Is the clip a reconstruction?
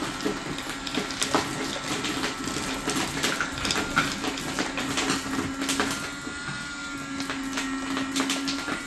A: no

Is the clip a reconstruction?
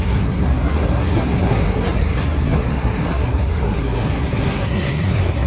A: yes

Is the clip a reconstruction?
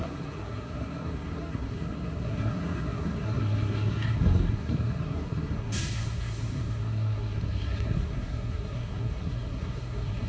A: yes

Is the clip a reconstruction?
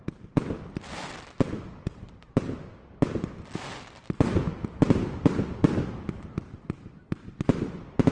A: no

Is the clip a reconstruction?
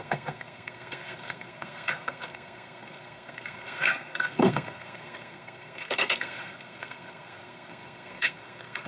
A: yes